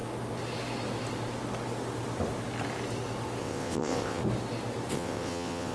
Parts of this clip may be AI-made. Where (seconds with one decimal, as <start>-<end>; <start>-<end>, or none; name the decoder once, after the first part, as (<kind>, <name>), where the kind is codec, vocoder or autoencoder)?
3.4-4.2 (vocoder, WaveNeXt); 4.9-5.7